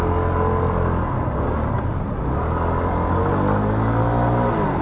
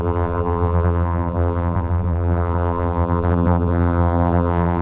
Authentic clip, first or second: first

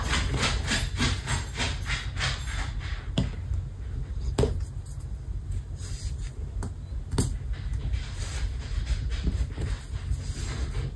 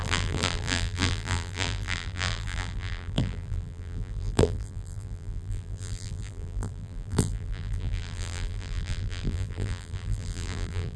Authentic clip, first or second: first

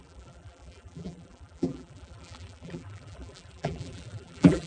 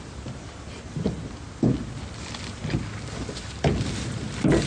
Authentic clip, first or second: second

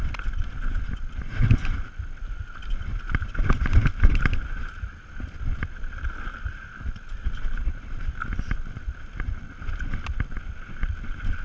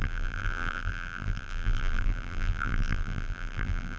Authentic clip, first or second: first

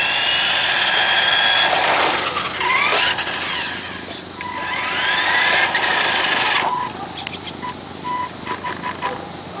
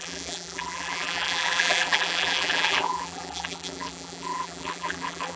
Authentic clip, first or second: first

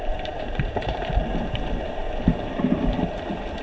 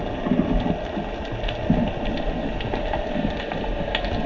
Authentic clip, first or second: second